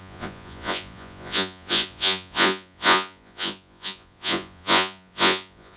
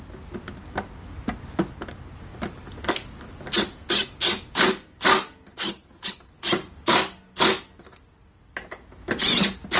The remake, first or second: first